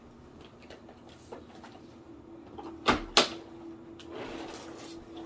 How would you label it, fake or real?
real